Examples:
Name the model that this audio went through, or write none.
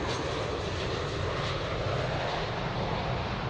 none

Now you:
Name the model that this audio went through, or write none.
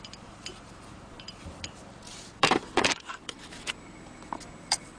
vocoder, BigVGAN v2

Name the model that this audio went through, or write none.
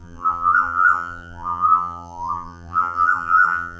vocoder, BigVGAN v2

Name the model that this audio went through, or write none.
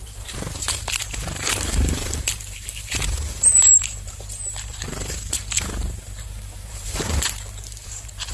vocoder, BigVGAN v2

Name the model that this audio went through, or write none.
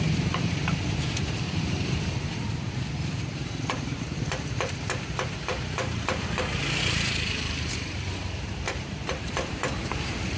vocoder, BigVGAN v2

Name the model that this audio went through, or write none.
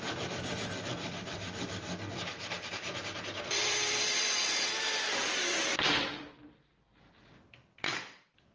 vocoder, BigVGAN v2